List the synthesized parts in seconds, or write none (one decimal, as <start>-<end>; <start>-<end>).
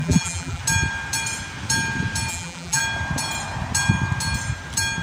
0.0-0.6; 2.3-2.8